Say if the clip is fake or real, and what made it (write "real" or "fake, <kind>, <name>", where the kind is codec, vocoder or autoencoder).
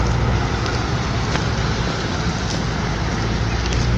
real